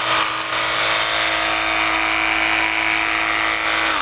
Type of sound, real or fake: real